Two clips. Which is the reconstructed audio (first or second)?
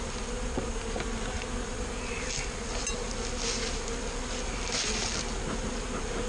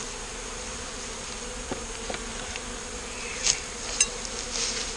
second